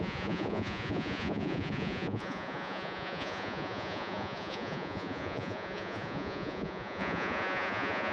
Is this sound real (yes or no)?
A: no